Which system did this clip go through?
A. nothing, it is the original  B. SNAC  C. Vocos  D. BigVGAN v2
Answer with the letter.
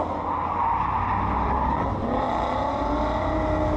A